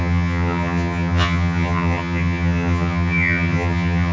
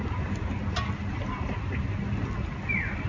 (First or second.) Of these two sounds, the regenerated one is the first